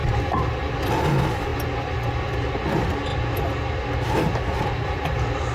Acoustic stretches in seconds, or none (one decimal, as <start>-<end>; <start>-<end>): 0.0-5.5